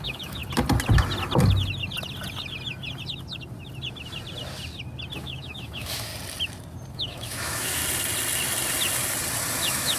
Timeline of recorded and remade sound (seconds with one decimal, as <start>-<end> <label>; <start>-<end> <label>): 0.0-0.4 remade; 0.4-5.2 recorded; 5.2-6.1 remade; 6.1-6.9 recorded; 6.9-7.8 remade; 7.8-9.6 recorded; 9.6-10.0 remade